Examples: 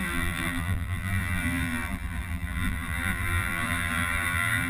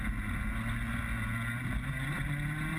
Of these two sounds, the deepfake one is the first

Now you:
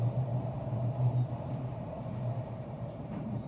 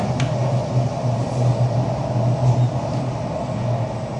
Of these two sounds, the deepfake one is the first